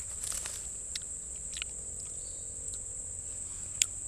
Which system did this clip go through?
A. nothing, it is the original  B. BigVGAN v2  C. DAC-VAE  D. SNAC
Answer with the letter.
A